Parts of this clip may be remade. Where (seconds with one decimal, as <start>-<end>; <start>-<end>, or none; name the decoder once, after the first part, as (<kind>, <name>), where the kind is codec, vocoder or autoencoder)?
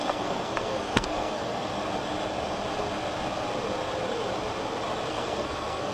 0.0-1.7 (codec, SNAC); 5.1-5.9